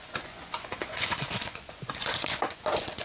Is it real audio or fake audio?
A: fake